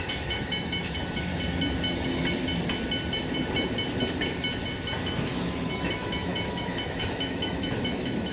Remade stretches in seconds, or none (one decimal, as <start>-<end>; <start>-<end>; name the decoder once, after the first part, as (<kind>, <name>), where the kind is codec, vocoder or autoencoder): 0.0-1.3 (autoencoder, DAC-VAE); 5.0-8.3